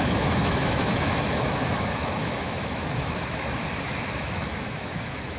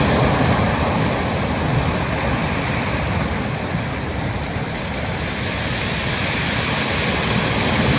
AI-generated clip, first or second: first